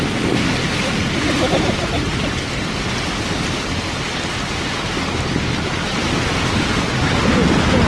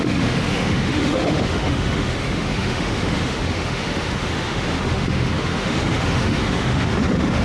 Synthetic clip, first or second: second